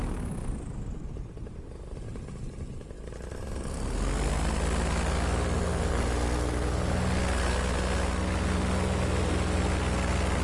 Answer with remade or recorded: recorded